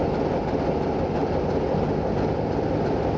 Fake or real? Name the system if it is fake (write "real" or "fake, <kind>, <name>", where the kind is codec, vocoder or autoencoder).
real